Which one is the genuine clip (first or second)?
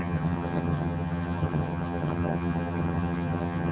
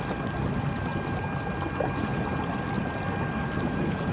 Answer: second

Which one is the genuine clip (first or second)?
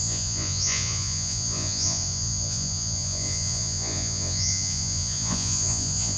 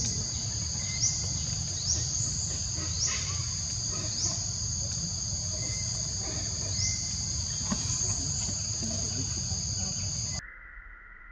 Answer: second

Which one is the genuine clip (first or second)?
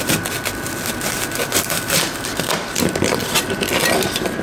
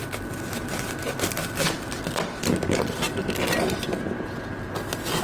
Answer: second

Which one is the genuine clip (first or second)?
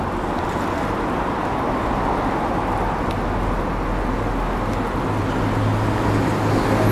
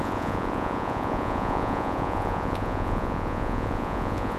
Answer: first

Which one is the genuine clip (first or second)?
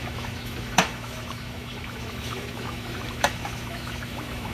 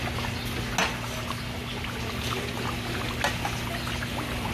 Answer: second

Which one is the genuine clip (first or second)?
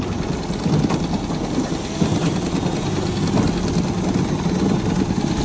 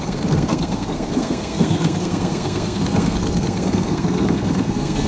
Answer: first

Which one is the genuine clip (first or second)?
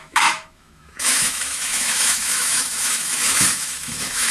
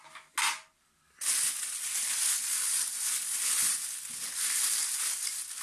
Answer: second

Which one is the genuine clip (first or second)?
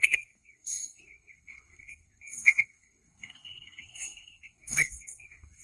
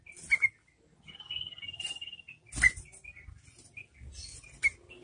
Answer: second